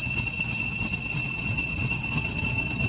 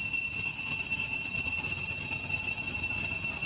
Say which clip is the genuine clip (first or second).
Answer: second